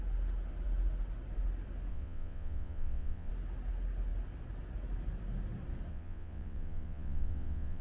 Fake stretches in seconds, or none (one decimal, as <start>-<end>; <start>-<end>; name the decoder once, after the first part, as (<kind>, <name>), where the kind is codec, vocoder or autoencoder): 1.9-3.3 (vocoder, WaveNeXt); 5.9-7.8